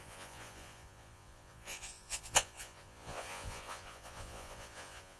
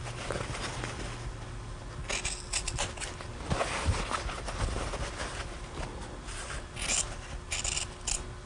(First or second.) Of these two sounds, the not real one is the first